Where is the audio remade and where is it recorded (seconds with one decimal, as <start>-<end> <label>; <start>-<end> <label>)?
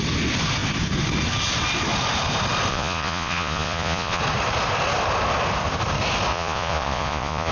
0.0-2.7 recorded; 2.7-4.2 remade; 4.2-6.3 recorded; 6.3-7.5 remade